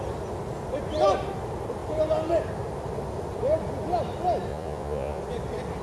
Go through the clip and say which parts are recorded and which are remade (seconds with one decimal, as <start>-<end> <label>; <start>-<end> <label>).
0.0-4.5 recorded; 4.5-5.2 remade; 5.2-5.8 recorded